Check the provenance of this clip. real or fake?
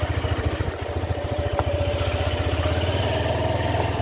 real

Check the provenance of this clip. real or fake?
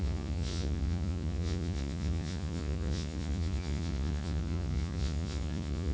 fake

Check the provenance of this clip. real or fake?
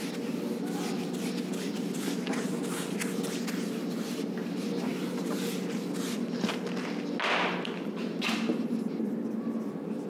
real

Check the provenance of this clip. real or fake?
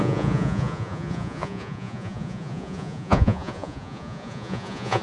fake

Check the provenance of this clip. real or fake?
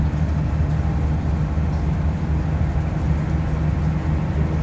real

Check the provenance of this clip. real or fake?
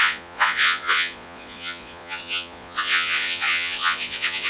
fake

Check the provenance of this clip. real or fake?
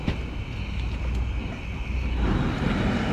real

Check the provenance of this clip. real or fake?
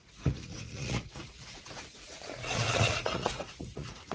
fake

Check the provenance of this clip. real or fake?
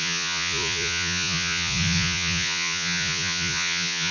fake